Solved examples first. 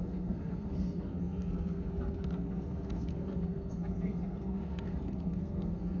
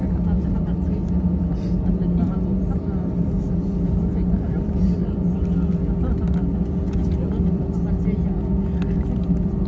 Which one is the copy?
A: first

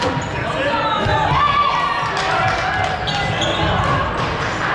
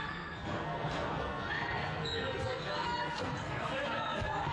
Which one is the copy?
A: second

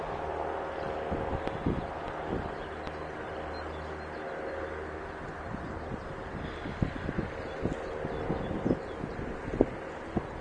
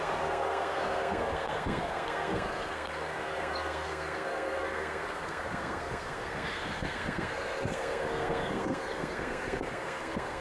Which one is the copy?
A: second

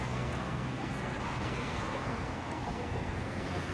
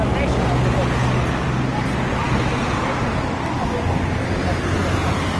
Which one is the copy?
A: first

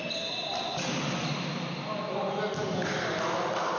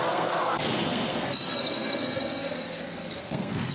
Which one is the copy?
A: second